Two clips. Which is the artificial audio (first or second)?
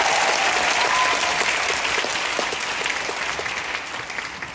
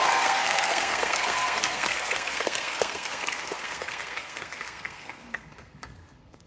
second